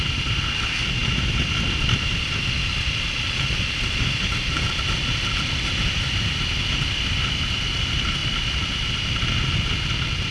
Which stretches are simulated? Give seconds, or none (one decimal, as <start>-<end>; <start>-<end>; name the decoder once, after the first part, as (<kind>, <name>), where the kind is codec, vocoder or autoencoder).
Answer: none

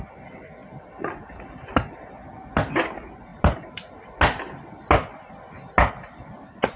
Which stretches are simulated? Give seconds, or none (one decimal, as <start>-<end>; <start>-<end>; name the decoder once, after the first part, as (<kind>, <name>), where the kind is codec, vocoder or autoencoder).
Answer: none

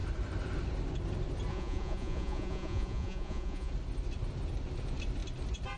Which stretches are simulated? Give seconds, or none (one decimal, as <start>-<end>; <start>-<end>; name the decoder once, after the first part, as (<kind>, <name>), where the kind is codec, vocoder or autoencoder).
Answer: 1.5-3.7 (vocoder, Vocos)

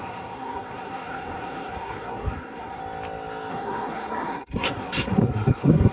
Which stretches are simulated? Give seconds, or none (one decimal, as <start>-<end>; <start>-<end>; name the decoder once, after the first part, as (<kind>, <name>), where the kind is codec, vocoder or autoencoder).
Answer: 0.0-2.8 (codec, SNAC); 3.5-5.9

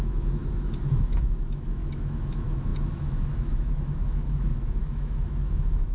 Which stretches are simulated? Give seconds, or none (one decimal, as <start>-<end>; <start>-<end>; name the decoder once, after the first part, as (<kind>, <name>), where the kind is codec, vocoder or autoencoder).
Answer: 0.0-5.9 (autoencoder, DAC-VAE)

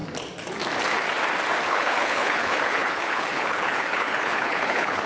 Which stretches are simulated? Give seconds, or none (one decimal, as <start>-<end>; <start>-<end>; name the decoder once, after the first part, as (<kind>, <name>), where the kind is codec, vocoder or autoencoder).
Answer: 1.7-5.1 (codec, HILCodec)

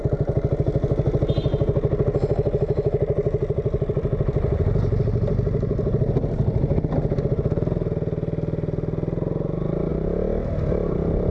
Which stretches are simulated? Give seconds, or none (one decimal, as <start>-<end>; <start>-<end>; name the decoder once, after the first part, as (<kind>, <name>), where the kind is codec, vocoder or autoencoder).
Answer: none

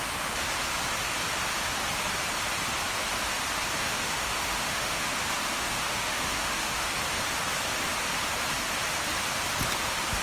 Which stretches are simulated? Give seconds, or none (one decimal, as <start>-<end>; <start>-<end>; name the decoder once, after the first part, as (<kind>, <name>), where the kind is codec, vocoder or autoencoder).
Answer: 3.8-6.9 (autoencoder, DAC-VAE)